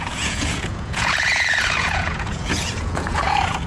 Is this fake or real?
fake